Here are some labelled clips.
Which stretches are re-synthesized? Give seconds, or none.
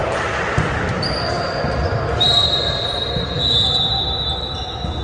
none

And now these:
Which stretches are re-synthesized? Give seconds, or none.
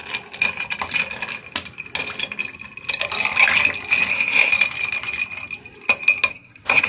4.1-4.5; 6.3-6.9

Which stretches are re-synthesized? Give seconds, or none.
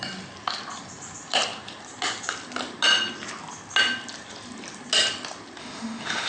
5.6-6.3